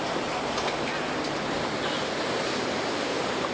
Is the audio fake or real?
real